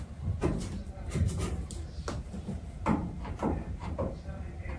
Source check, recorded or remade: remade